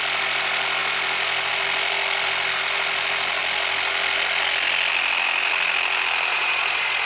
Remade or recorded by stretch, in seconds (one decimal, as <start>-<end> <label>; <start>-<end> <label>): 0.0-6.3 recorded; 6.3-7.1 remade

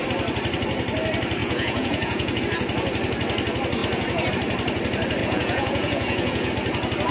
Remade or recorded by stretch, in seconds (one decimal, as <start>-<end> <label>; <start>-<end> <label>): 0.0-1.4 recorded; 1.4-2.4 remade; 2.4-5.2 recorded; 5.2-6.5 remade; 6.5-7.1 recorded

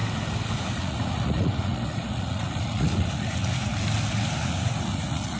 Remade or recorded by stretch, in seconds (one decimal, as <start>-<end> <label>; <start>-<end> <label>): 0.0-0.5 recorded; 0.5-3.7 remade; 3.7-4.4 recorded; 4.4-5.4 remade

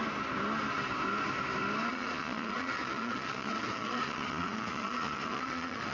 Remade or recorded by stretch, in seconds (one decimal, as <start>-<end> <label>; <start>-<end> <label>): 0.0-1.9 recorded; 1.9-5.9 remade